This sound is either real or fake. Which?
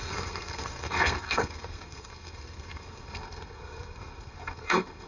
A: fake